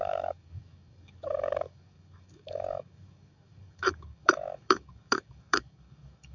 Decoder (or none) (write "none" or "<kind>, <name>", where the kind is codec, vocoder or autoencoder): codec, DAC